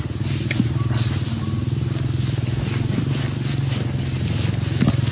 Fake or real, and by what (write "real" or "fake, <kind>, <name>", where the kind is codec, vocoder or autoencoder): real